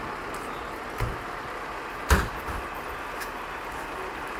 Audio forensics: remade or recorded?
recorded